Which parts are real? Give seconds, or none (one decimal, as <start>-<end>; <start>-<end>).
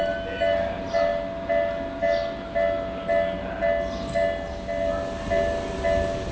0.0-6.3